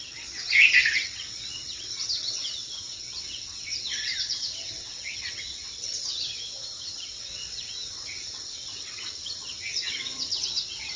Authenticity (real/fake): fake